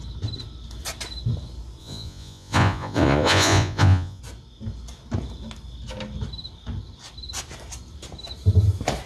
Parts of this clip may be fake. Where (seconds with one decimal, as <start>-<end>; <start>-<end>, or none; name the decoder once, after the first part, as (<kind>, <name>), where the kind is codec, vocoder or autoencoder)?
1.8-4.2 (vocoder, Vocos)